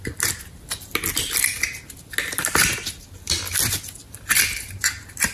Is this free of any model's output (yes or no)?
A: yes